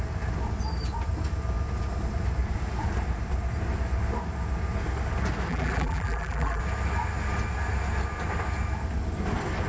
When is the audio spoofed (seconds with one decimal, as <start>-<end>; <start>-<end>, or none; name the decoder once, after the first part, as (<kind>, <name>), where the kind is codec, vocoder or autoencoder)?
5.5-6.6 (vocoder, BigVGAN v2)